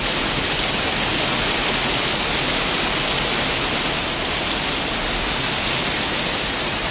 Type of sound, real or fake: real